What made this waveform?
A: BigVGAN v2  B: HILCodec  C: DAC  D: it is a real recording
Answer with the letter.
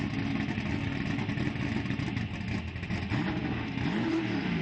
D